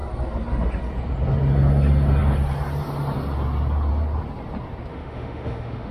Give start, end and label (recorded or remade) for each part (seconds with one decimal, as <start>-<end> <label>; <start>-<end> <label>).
0.0-4.9 recorded; 4.9-5.9 remade